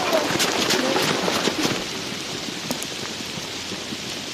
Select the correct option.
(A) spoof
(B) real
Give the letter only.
B